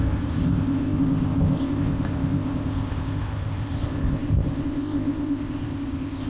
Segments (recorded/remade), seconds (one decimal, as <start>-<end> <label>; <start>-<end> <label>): 0.0-6.3 remade